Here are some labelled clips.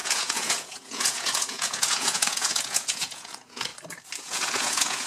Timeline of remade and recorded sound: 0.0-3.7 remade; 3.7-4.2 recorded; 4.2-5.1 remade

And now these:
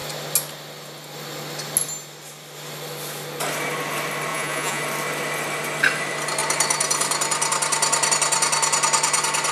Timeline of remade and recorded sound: 0.0-4.3 recorded; 4.3-4.8 remade; 4.8-9.5 recorded